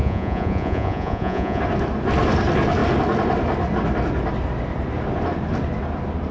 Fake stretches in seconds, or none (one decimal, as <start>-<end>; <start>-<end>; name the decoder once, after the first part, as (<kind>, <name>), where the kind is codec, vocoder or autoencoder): 0.0-1.6 (vocoder, Vocos)